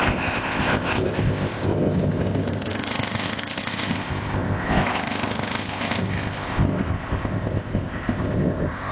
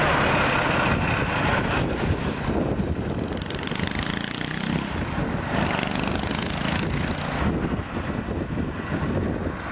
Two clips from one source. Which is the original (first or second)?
second